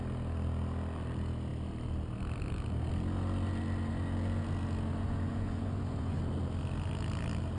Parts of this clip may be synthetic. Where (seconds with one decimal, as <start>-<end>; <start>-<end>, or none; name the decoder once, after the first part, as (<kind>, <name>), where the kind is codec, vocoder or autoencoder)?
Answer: 5.0-6.2 (vocoder, Vocos)